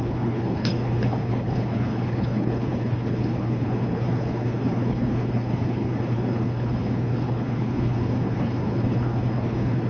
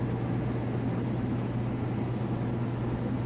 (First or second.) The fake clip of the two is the first